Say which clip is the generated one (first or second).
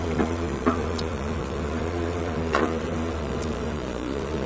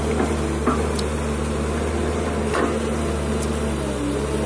first